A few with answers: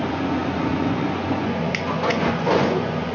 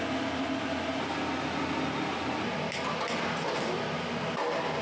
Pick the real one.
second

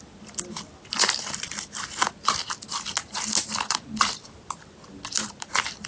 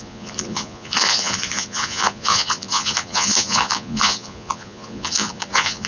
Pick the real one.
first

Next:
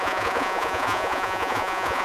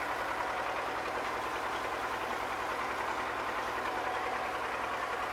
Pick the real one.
second